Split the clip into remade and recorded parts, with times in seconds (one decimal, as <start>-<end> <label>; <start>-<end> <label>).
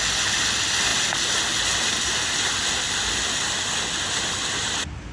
0.0-5.1 recorded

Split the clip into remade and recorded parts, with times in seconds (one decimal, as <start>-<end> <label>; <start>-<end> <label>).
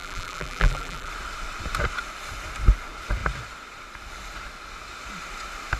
0.0-1.1 remade; 1.1-5.8 recorded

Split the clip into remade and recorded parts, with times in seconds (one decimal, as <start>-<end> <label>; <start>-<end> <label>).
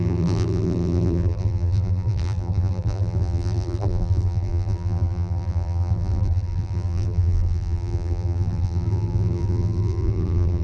0.0-10.6 remade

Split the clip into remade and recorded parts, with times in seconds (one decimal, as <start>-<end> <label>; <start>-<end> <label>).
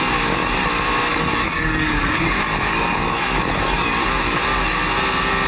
0.0-1.1 recorded; 1.1-4.4 remade; 4.4-5.5 recorded